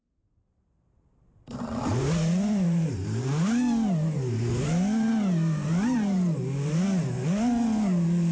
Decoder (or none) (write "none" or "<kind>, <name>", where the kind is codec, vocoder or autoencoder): none